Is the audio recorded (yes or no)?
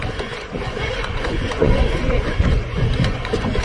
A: no